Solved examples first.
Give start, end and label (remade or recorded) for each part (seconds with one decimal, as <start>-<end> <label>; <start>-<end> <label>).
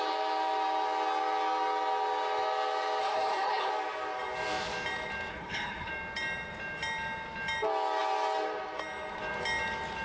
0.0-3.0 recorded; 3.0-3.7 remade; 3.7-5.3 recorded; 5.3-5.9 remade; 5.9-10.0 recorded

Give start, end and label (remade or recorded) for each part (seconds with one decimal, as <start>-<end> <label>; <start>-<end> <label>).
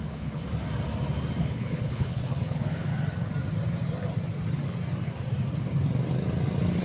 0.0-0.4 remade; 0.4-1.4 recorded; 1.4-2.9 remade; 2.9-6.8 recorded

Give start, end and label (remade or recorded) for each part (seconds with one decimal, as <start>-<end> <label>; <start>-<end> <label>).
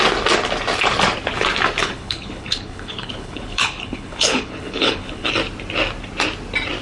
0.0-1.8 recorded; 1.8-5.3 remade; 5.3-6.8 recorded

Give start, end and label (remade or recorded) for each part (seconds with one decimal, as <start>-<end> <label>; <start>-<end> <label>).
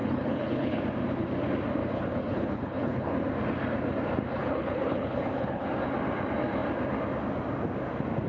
0.0-0.8 remade; 0.8-1.8 recorded; 1.8-3.1 remade; 3.1-4.4 recorded; 4.4-5.7 remade; 5.7-8.3 recorded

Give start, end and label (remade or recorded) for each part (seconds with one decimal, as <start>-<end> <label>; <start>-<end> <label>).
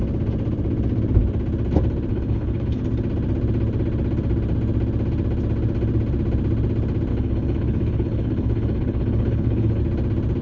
0.0-2.1 recorded; 2.1-2.8 remade; 2.8-7.1 recorded; 7.1-9.8 remade; 9.8-10.4 recorded